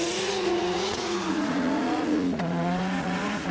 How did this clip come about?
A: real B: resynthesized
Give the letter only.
B